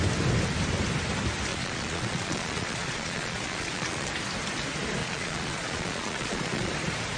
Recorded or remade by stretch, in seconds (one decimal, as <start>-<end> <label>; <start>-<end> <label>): 0.0-1.5 recorded; 1.5-4.1 remade; 4.1-5.0 recorded; 5.0-6.7 remade; 6.7-7.2 recorded